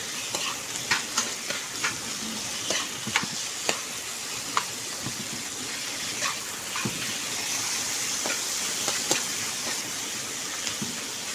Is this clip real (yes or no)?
yes